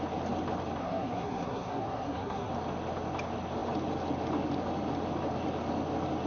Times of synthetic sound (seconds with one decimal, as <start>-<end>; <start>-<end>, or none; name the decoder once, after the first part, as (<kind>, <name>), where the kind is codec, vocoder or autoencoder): 0.8-2.5 (codec, SNAC)